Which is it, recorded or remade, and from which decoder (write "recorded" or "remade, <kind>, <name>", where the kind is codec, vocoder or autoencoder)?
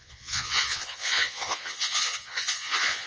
remade, vocoder, Vocos